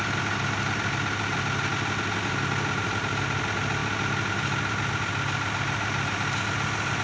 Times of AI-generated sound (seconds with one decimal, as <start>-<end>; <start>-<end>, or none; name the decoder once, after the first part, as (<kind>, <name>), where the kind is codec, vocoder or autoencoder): none